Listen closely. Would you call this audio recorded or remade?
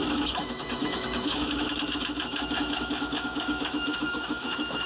remade